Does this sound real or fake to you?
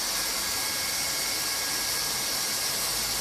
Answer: real